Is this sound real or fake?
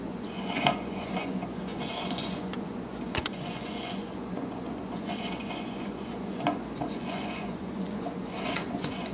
fake